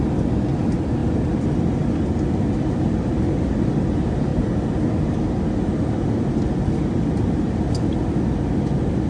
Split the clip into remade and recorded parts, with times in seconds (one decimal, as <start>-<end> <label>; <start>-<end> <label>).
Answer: 0.0-9.1 recorded